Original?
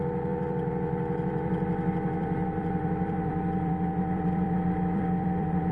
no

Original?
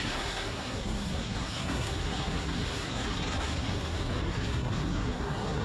no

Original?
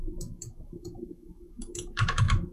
no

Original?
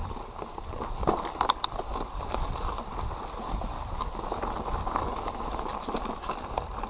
yes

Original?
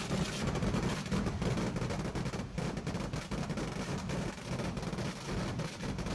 yes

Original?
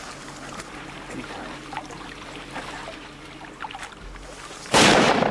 yes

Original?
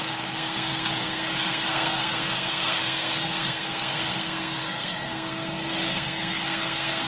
no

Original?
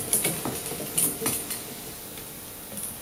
yes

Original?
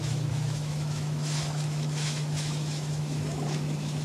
no